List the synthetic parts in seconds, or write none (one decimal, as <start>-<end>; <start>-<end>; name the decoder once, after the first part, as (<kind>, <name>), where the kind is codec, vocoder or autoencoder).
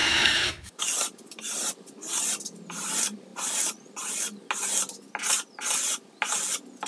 0.0-0.8 (autoencoder, DAC-VAE)